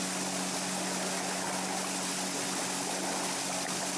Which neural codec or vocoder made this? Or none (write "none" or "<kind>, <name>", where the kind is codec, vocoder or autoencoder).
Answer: none